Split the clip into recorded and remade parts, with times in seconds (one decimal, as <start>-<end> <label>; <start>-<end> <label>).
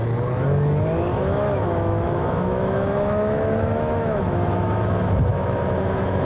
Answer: 0.0-1.1 recorded; 1.1-4.8 remade; 4.8-5.3 recorded; 5.3-6.2 remade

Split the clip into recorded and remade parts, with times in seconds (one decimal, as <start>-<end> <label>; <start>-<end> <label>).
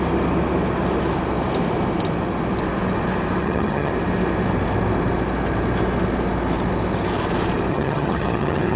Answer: 0.0-3.4 recorded; 3.4-3.9 remade; 3.9-7.7 recorded; 7.7-8.8 remade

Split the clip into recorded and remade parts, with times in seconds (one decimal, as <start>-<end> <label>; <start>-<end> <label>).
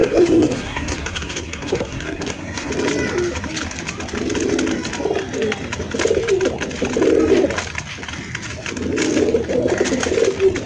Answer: 0.0-2.7 remade; 2.7-10.7 recorded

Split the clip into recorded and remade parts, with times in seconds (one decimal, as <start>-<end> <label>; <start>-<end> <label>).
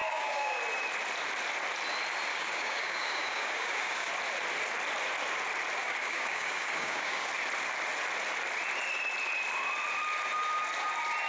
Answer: 0.0-0.6 remade; 0.6-2.3 recorded; 2.3-4.1 remade; 4.1-5.8 recorded; 5.8-7.3 remade; 7.3-11.3 recorded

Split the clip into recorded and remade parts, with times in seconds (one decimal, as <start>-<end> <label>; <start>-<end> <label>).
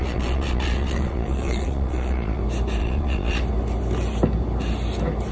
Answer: 0.0-2.4 remade; 2.4-2.8 recorded; 2.8-3.4 remade; 3.4-5.3 recorded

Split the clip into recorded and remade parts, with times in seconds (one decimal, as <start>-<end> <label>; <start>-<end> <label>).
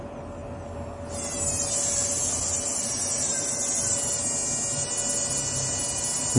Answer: 0.0-6.4 recorded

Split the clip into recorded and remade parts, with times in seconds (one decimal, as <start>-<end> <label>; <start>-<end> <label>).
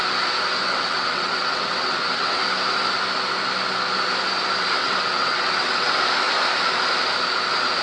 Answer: 0.0-0.7 recorded; 0.7-2.4 remade; 2.4-4.8 recorded; 4.8-5.9 remade; 5.9-7.8 recorded